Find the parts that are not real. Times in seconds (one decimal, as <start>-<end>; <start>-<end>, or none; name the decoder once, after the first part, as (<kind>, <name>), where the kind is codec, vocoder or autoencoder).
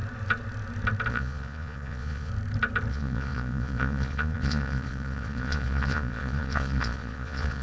1.1-2.3 (vocoder, Vocos); 2.9-7.6